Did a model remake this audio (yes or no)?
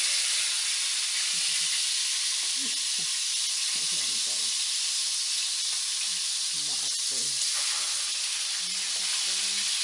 no